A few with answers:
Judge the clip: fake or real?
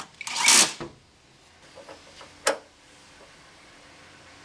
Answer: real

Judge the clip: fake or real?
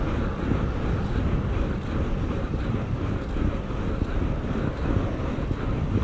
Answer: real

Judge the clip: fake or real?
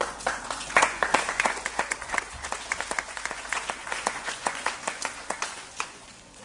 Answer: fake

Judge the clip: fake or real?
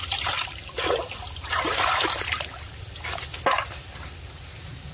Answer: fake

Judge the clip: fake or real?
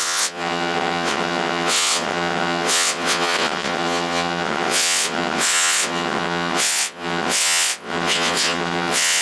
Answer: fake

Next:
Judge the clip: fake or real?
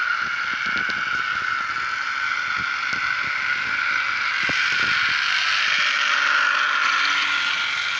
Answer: real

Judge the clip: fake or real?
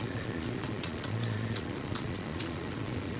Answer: fake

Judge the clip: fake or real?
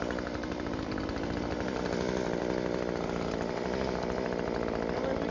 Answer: fake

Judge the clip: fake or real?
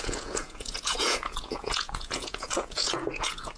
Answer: fake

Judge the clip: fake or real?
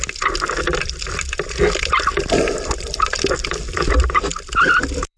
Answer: fake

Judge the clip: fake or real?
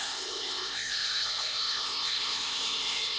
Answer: fake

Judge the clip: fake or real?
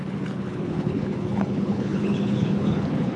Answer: fake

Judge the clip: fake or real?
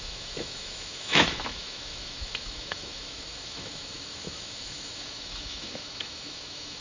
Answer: fake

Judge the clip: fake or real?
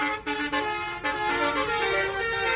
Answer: real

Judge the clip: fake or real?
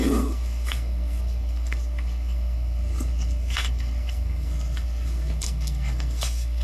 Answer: fake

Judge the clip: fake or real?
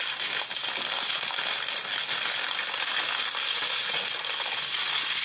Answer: real